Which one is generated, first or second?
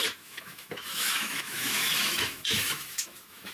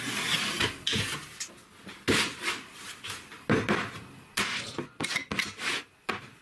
first